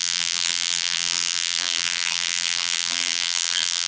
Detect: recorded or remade remade